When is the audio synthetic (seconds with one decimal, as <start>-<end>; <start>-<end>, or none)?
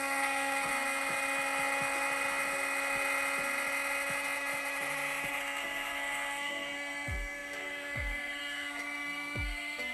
0.0-0.7; 5.4-9.9